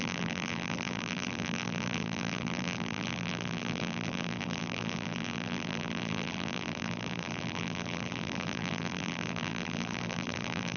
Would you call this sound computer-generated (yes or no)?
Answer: yes